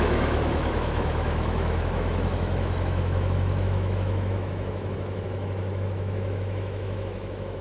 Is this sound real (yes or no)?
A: no